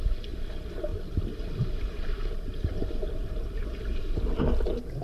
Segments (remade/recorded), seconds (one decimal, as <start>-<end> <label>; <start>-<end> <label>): 0.0-0.9 recorded; 0.9-1.7 remade; 1.7-3.0 recorded; 3.0-4.0 remade; 4.0-5.0 recorded